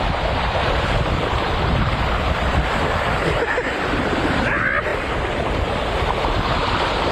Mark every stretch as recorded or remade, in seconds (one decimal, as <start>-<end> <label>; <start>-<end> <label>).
0.0-4.9 remade; 4.9-5.9 recorded; 5.9-7.1 remade